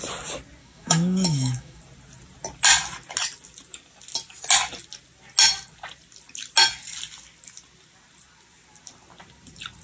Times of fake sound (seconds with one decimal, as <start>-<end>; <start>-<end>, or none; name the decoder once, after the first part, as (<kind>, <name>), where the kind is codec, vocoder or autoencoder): 0.6-1.8 (autoencoder, DAC-VAE)